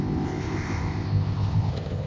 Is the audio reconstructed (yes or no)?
yes